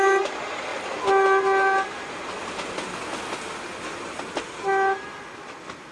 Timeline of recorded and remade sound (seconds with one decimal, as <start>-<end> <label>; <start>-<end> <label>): 0.0-5.9 recorded